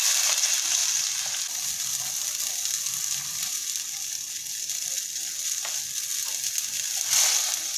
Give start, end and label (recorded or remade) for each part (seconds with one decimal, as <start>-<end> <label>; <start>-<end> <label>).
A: 0.0-6.9 recorded; 6.9-7.8 remade